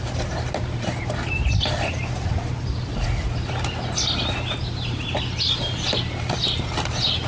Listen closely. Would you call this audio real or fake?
real